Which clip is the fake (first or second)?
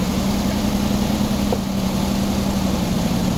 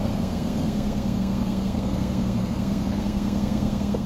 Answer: second